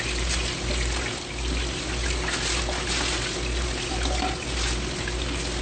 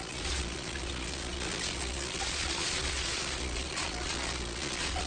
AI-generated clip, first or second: second